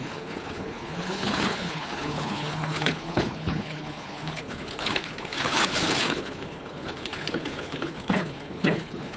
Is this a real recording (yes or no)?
no